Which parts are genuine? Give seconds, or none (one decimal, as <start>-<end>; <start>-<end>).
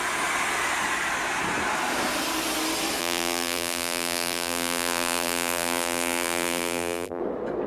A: 0.0-3.0; 7.2-7.7